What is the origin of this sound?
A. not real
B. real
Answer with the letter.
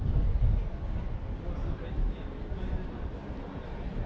B